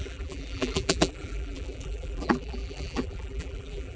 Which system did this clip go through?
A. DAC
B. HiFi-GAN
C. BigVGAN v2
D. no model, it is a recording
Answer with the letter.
C